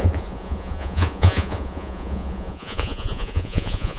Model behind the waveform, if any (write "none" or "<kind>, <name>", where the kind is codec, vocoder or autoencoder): vocoder, Vocos